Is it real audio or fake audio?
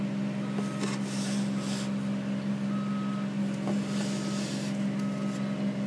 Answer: real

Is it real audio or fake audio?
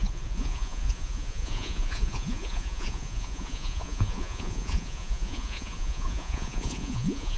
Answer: fake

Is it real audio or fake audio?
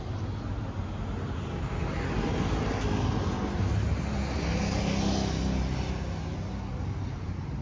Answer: real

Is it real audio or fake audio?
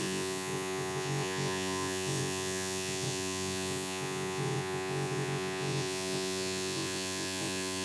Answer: fake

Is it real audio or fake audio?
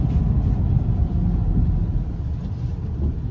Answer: real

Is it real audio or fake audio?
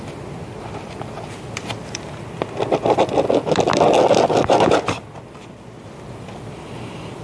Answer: real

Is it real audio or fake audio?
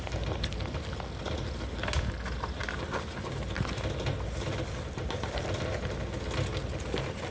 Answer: real